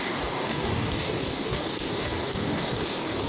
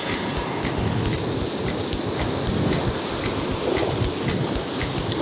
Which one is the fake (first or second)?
first